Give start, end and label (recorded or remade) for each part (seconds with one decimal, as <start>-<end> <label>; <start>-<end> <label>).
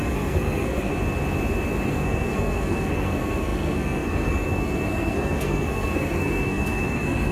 0.0-0.9 remade; 0.9-1.9 recorded; 1.9-7.3 remade